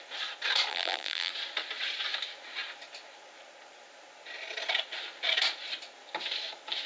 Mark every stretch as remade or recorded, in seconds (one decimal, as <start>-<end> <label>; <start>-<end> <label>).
0.0-0.7 recorded; 0.7-1.3 remade; 1.3-6.9 recorded